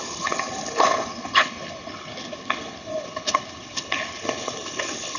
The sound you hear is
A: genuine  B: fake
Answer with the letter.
B